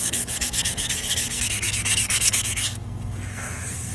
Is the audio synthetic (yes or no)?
yes